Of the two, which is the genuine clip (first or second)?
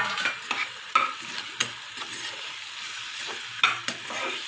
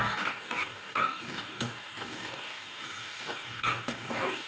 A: first